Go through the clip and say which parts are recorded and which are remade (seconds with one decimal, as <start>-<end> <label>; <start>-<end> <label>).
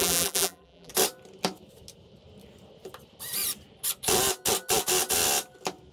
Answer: 0.0-0.9 remade; 0.9-5.9 recorded